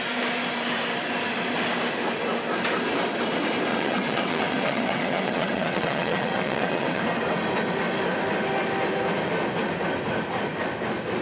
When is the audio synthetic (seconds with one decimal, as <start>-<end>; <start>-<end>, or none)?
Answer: 3.7-7.0